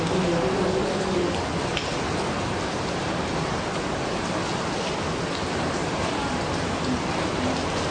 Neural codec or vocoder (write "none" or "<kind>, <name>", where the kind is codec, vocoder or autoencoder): none